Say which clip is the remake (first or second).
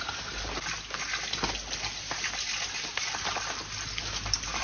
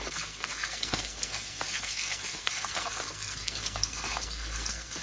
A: second